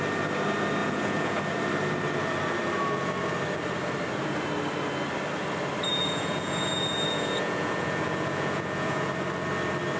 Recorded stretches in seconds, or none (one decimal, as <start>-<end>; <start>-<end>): 0.0-0.8; 1.4-5.9; 9.1-10.0